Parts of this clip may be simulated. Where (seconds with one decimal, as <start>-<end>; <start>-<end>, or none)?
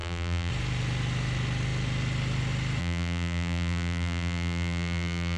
0.0-0.5; 2.8-5.4